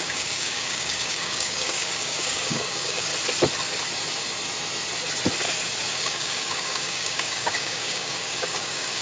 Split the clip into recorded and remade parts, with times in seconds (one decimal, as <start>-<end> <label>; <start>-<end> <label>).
0.0-3.1 remade; 3.1-5.9 recorded; 5.9-9.0 remade

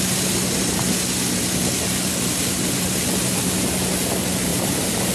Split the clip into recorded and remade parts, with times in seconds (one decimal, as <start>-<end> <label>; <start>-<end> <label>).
0.0-4.5 recorded; 4.5-5.1 remade